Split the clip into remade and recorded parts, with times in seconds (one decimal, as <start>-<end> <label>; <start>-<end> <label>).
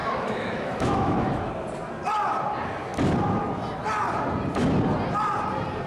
0.0-1.5 remade; 1.5-5.9 recorded